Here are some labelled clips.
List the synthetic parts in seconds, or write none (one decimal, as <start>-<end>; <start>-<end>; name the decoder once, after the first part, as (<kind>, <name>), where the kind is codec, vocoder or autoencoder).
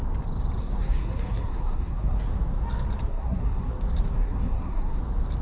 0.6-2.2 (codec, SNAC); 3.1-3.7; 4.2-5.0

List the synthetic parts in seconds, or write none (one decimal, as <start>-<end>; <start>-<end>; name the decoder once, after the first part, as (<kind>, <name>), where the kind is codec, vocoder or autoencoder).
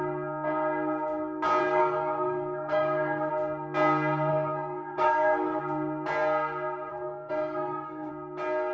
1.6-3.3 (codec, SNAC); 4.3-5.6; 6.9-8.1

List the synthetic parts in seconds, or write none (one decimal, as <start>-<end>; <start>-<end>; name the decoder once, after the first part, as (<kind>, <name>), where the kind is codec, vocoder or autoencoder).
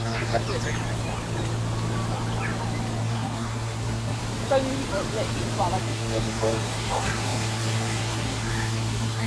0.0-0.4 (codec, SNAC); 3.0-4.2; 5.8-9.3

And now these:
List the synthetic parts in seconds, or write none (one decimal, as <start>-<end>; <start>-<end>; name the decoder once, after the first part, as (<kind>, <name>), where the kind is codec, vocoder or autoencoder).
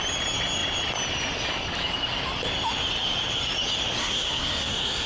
4.0-5.1 (codec, SNAC)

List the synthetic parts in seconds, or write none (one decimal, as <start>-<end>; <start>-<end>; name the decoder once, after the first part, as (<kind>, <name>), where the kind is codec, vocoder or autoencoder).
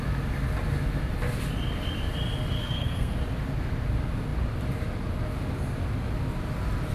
2.6-3.1 (codec, SNAC)